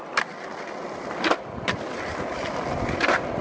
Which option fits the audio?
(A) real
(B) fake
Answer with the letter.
A